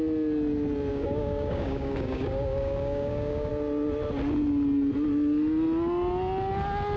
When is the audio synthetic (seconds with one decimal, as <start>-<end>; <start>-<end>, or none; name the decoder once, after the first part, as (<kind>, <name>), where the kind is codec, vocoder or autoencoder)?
0.9-3.5 (codec, DAC)